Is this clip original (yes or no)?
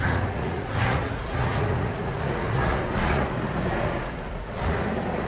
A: no